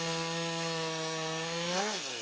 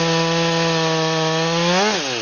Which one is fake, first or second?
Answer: first